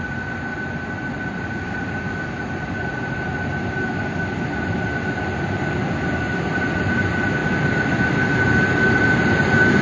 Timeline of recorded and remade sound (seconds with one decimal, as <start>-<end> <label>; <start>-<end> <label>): 0.0-7.4 recorded; 7.4-9.8 remade